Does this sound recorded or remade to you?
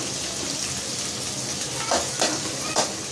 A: recorded